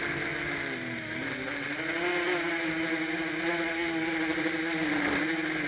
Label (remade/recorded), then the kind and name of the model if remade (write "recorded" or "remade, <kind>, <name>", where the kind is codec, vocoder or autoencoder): recorded